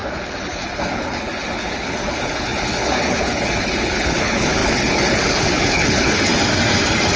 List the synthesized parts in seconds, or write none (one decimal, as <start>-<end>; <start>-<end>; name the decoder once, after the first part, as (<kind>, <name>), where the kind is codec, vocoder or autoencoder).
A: 0.0-6.3 (codec, HILCodec)